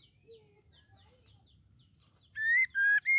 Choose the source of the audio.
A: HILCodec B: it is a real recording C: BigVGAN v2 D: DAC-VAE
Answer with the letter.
B